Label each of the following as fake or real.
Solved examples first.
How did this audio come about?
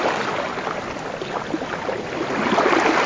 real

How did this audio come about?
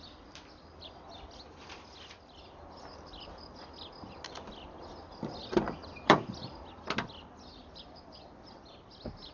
real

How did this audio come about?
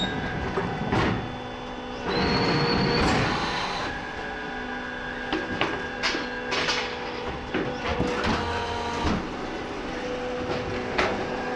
real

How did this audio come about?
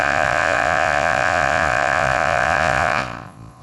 fake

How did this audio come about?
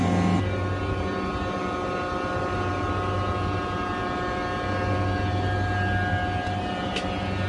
real